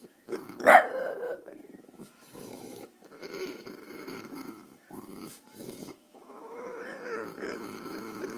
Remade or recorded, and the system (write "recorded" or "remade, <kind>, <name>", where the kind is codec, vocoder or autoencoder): remade, autoencoder, DAC-VAE